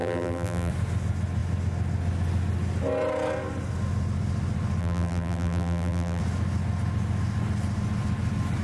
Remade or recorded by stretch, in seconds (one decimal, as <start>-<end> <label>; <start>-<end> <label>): 0.0-0.7 remade; 0.7-4.8 recorded; 4.8-6.2 remade; 6.2-8.6 recorded